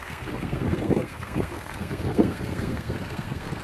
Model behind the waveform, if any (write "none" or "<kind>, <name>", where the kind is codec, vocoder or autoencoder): codec, SNAC